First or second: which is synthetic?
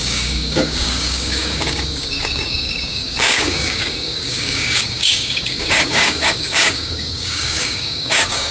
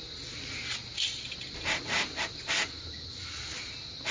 first